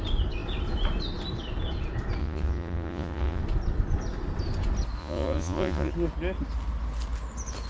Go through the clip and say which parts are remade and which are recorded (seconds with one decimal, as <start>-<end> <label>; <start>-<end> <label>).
0.0-2.2 recorded; 2.2-3.4 remade; 3.4-5.0 recorded; 5.0-5.9 remade; 5.9-7.7 recorded